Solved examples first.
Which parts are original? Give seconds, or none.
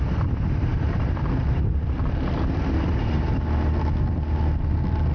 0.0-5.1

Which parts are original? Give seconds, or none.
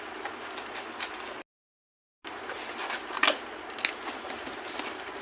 0.0-5.2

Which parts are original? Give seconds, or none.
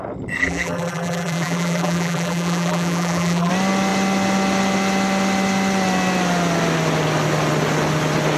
0.0-0.4; 3.5-8.4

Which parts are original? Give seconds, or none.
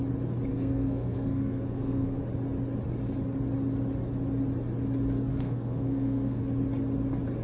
0.0-0.5; 2.2-5.3; 6.4-7.4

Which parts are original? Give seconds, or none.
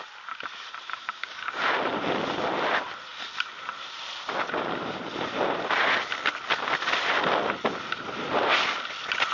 0.0-0.9; 1.6-9.3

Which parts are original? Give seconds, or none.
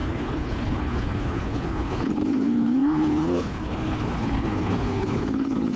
none